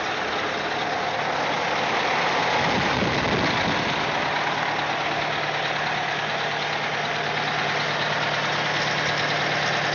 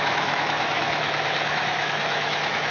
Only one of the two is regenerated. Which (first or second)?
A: second